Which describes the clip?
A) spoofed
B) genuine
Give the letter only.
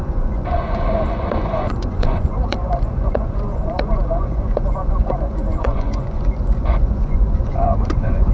A